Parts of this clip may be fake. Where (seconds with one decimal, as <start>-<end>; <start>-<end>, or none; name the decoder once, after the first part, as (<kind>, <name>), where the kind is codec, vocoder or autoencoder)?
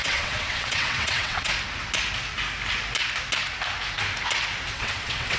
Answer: 0.0-1.5 (vocoder, WaveNeXt); 4.7-5.4